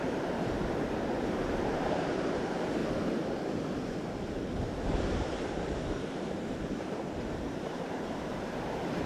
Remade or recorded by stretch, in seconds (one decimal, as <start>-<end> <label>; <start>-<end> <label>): 0.0-2.8 remade; 2.8-4.2 recorded; 4.2-9.1 remade